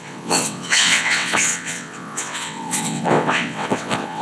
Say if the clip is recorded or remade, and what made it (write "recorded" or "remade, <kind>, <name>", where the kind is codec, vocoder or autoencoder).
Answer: remade, vocoder, WaveNeXt